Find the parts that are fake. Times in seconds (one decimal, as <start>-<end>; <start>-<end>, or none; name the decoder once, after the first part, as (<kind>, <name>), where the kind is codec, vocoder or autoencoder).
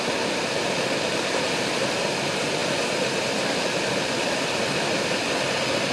none